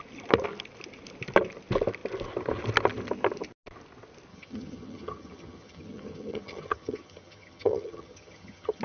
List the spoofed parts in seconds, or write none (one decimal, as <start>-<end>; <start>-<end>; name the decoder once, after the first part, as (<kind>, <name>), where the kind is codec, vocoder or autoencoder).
4.3-8.8 (vocoder, HiFi-GAN)

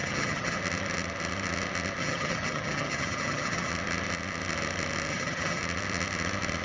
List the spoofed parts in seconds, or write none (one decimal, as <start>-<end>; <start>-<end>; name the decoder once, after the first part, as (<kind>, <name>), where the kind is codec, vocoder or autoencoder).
0.0-0.6 (vocoder, HiFi-GAN); 2.0-3.7; 5.1-5.6